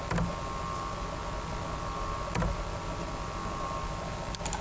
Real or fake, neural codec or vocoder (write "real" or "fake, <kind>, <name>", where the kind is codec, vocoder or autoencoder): real